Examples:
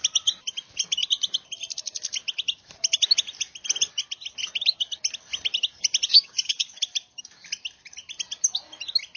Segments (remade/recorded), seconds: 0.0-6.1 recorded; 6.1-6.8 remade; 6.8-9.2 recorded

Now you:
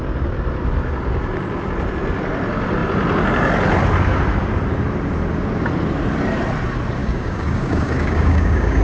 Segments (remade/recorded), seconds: 0.0-7.0 recorded; 7.0-8.8 remade